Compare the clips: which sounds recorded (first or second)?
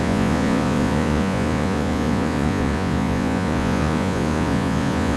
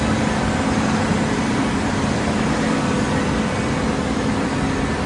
second